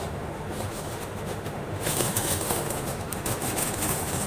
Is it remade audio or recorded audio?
remade